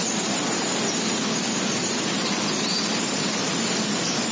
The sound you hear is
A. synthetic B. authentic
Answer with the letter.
B